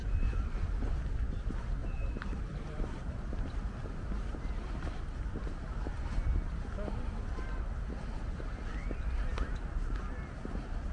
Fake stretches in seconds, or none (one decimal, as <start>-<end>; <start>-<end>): 1.8-5.0